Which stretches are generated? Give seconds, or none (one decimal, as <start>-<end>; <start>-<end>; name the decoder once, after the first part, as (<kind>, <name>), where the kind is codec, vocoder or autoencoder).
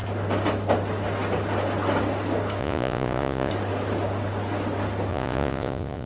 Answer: 2.6-3.5 (vocoder, Vocos); 5.1-6.1